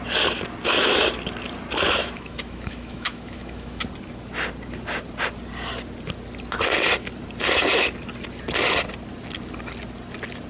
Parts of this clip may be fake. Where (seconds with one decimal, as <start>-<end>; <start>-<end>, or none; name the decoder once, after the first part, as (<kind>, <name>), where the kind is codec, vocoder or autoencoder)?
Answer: 2.0-3.8 (autoencoder, DAC-VAE)